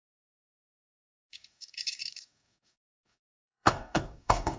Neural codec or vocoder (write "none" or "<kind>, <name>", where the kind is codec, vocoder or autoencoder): codec, DAC